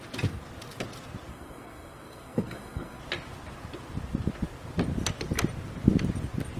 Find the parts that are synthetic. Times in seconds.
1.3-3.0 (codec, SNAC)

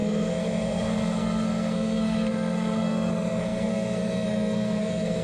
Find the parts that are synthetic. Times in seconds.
0.0-5.2 (codec, SNAC)

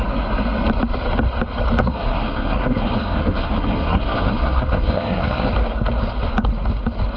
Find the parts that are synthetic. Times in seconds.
1.8-5.5 (codec, SNAC)

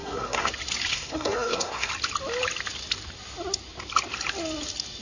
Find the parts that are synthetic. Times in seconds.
0.0-0.5 (codec, SNAC); 0.9-1.9

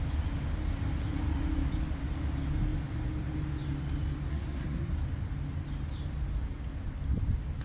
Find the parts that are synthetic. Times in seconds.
4.3-5.0 (codec, SNAC)

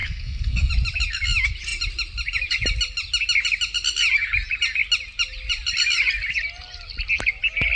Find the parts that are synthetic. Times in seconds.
0.0-0.7 (codec, SNAC)